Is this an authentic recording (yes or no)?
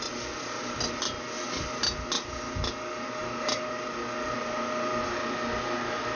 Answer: yes